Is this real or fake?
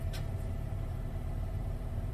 fake